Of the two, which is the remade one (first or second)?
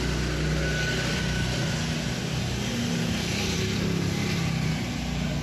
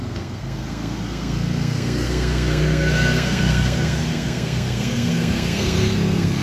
second